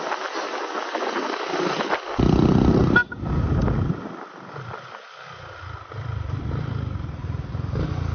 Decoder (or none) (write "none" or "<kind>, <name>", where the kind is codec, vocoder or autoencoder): none